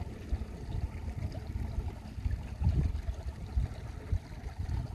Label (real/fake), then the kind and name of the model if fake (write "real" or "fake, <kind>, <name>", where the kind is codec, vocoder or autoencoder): real